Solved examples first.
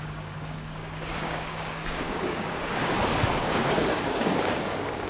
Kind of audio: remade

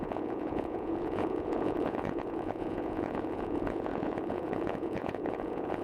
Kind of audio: remade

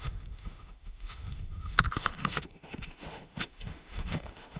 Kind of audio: remade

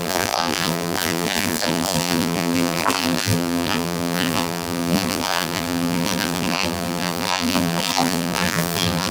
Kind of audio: remade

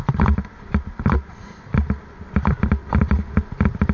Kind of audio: recorded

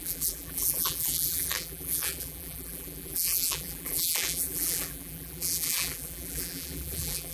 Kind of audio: remade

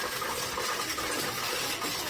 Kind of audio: recorded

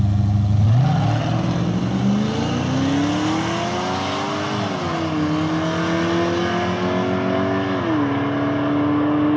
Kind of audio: recorded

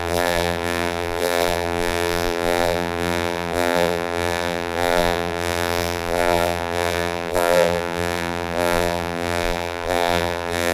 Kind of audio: remade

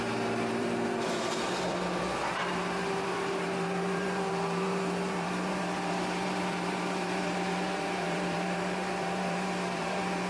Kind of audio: remade